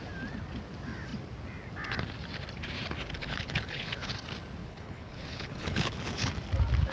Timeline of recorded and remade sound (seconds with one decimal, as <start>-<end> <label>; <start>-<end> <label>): 0.0-3.2 recorded; 3.2-4.1 remade; 4.1-4.6 recorded; 4.6-6.3 remade; 6.3-6.9 recorded